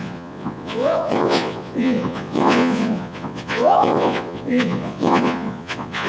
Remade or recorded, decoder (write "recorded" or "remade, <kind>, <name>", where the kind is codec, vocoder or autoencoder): remade, vocoder, Vocos